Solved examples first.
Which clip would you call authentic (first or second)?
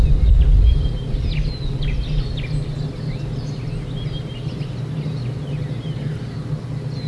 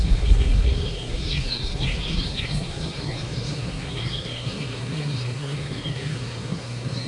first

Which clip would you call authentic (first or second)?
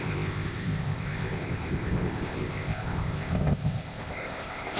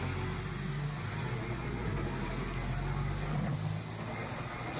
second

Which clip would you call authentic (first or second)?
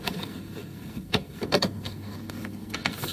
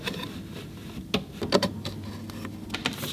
second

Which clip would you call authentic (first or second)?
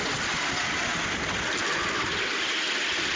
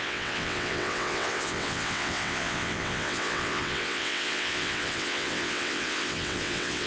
first